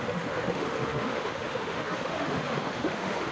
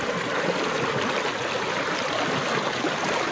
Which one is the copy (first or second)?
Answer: first